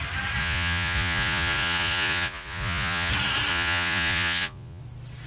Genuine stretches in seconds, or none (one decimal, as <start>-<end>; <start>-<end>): 0.0-0.4; 3.1-3.5; 4.8-5.3

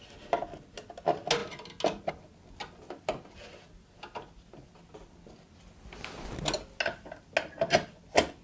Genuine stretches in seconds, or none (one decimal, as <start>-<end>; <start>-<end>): 0.0-8.4

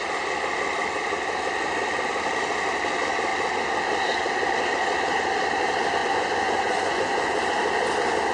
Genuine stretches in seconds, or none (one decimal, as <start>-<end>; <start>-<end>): 0.0-6.0; 7.4-8.3

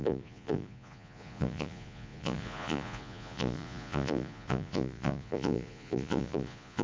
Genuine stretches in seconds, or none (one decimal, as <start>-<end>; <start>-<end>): none

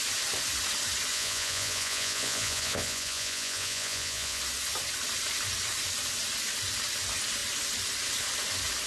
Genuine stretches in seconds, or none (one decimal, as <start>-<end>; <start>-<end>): 0.0-1.1; 4.4-8.9

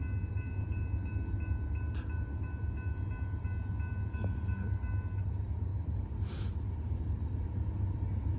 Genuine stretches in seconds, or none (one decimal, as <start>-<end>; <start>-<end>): 0.0-8.4